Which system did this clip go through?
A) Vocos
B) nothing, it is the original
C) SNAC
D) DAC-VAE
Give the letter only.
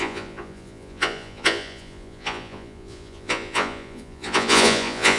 A